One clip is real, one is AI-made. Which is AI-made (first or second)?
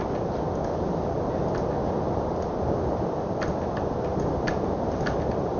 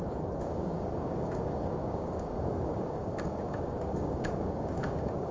second